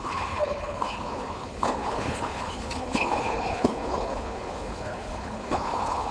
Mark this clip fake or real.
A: fake